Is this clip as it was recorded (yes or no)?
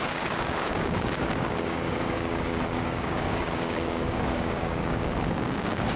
no